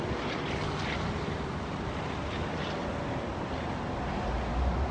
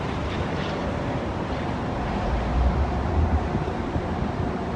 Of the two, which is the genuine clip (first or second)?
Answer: first